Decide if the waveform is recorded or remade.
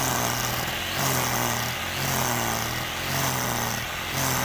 recorded